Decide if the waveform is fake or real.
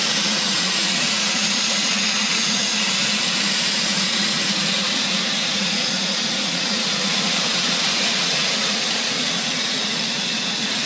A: fake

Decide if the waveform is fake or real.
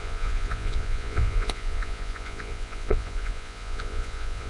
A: fake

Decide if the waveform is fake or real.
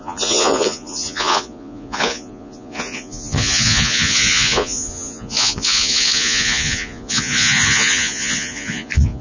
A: fake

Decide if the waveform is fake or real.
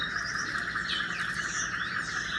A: real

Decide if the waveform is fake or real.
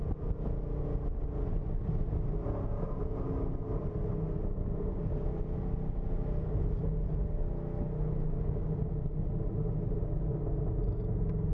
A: real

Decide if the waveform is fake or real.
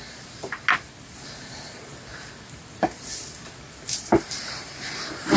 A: real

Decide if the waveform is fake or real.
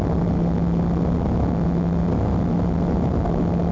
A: real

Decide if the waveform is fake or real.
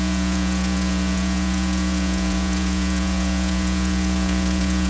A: fake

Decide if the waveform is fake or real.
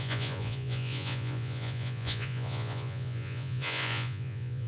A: fake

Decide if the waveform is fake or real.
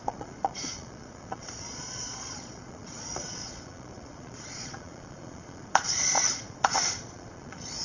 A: fake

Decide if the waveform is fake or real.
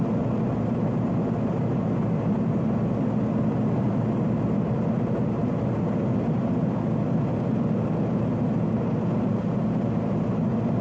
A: real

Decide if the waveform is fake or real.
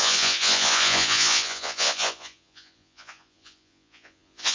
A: fake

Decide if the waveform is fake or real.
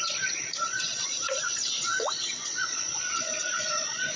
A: fake